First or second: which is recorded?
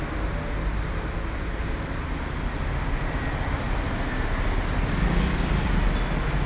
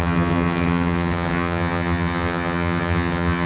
first